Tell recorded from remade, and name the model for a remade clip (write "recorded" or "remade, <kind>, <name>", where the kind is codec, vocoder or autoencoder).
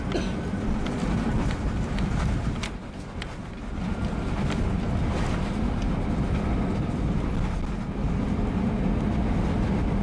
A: recorded